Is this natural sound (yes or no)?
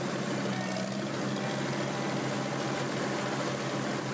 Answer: yes